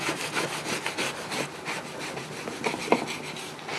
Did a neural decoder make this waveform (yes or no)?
no